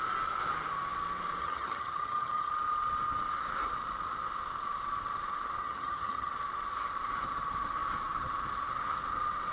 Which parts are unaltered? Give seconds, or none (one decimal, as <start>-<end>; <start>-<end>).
0.0-1.4; 2.5-5.6; 6.3-9.5